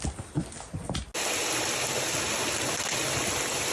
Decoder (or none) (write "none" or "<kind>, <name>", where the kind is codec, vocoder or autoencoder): none